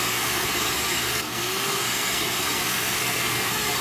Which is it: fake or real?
fake